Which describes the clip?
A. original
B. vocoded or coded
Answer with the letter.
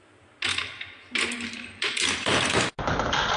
B